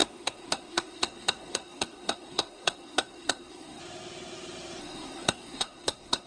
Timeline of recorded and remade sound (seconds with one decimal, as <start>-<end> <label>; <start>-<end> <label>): 0.0-3.8 remade; 3.8-4.8 recorded; 4.8-6.3 remade